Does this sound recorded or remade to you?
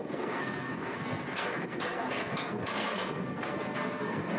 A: remade